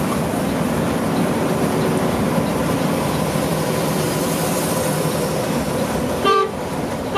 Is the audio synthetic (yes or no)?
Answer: yes